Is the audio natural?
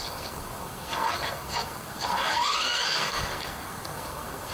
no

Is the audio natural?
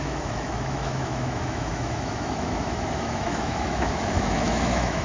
no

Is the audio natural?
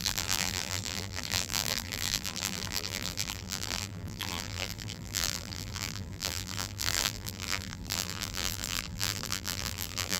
no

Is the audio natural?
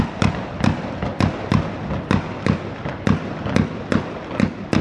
yes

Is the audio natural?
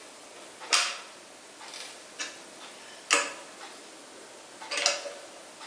yes